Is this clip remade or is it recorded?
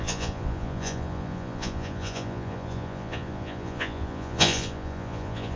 remade